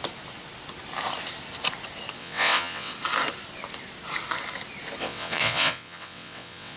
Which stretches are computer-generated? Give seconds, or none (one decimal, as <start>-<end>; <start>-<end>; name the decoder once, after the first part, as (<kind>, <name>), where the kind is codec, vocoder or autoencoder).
2.2-2.9 (vocoder, WaveNeXt); 5.0-6.8